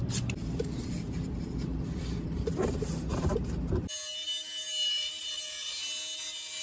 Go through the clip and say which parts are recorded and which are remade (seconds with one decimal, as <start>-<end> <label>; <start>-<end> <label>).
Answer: 0.0-6.6 recorded